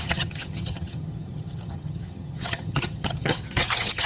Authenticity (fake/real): fake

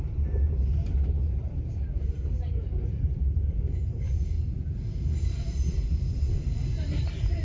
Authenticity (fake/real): fake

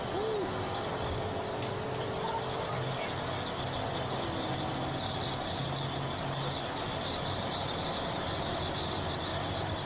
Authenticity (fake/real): real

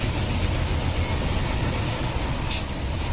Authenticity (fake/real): real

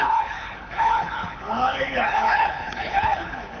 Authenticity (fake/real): fake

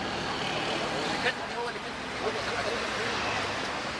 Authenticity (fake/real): real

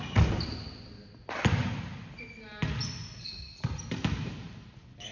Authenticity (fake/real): real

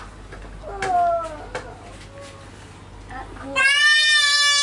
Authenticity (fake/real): real